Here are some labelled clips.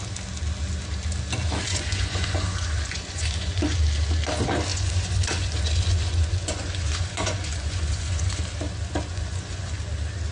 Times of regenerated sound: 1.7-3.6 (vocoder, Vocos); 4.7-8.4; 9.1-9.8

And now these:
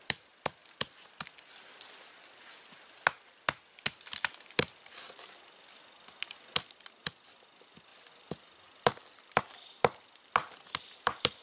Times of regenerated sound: none

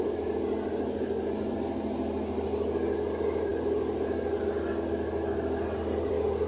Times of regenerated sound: none